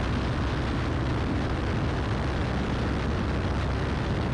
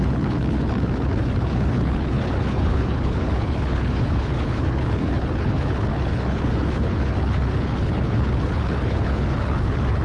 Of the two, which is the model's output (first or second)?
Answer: second